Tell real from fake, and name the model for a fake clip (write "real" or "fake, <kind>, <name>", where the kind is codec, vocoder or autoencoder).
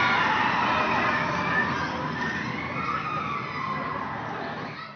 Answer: real